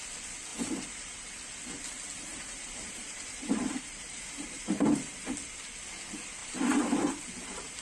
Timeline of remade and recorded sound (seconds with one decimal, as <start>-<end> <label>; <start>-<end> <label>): 0.0-0.5 recorded; 0.5-1.3 remade; 1.3-2.3 recorded; 2.3-5.1 remade; 5.1-6.4 recorded; 6.4-7.1 remade; 7.1-7.8 recorded